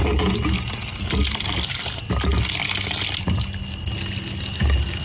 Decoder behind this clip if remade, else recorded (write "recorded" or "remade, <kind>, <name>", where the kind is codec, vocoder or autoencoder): recorded